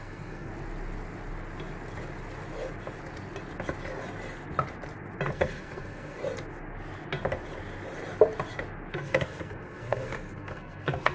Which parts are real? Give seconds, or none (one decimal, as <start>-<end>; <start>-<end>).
0.5-5.3; 6.2-8.9